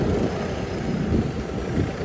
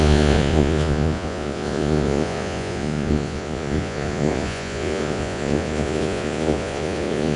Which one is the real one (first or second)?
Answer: first